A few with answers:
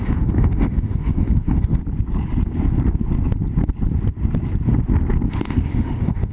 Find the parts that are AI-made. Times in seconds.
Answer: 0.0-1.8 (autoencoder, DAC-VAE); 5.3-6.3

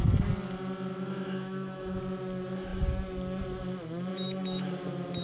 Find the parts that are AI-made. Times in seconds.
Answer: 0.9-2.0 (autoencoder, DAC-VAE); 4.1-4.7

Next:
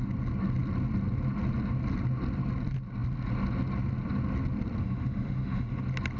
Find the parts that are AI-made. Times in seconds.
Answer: 4.8-5.8 (autoencoder, DAC-VAE)

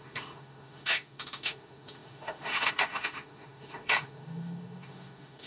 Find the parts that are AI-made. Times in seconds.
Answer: 0.0-5.5 (autoencoder, DAC-VAE)

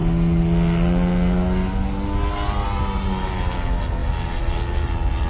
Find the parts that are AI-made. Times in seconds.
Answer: none

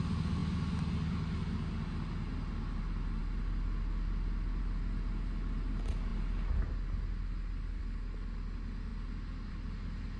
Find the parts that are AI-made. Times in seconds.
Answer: none

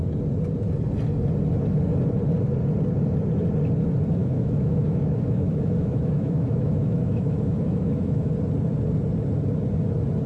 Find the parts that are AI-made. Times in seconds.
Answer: 4.2-8.3 (autoencoder, DAC-VAE)

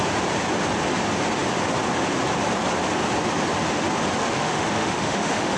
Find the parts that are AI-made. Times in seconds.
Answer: 4.2-5.6 (autoencoder, DAC-VAE)